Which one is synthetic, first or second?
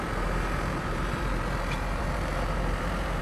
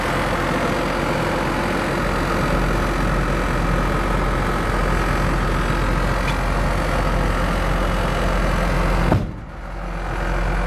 first